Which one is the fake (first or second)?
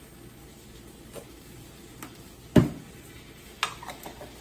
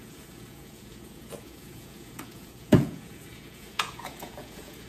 second